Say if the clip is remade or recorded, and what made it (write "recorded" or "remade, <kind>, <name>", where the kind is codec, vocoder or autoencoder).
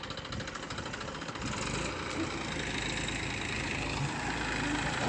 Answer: recorded